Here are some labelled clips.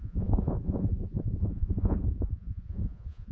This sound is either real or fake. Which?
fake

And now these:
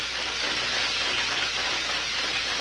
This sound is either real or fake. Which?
real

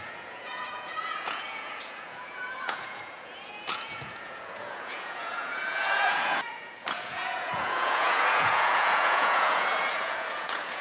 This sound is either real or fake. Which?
fake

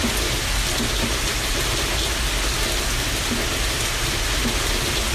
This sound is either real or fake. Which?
real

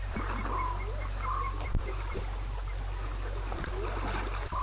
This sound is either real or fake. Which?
real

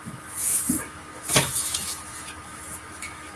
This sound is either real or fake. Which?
fake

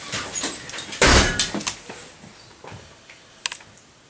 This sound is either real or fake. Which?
real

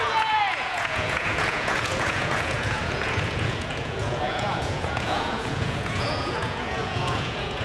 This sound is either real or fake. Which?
fake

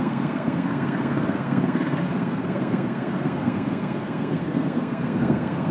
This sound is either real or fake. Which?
fake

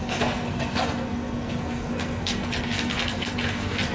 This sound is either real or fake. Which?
fake